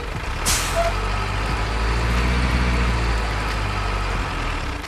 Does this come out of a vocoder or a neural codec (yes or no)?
no